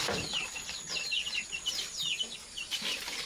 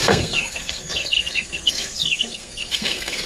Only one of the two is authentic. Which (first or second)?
first